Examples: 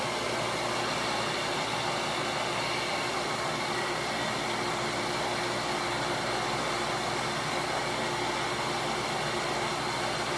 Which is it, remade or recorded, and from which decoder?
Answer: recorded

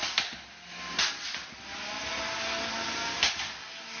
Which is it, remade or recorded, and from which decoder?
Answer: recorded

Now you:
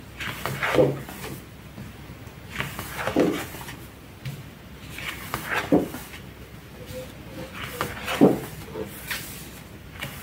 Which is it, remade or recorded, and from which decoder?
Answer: recorded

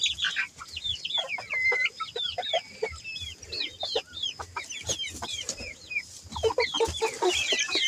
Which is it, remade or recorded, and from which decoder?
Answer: recorded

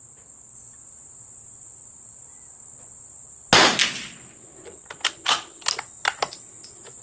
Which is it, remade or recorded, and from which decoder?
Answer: recorded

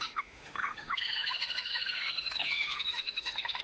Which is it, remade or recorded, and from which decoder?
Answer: remade, autoencoder, DAC-VAE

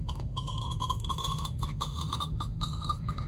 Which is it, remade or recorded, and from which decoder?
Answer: remade, autoencoder, DAC-VAE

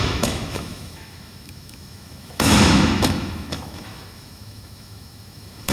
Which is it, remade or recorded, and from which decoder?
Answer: remade, autoencoder, DAC-VAE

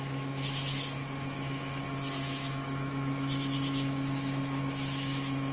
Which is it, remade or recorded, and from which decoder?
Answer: remade, autoencoder, DAC-VAE